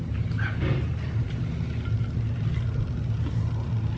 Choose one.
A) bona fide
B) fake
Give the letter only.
A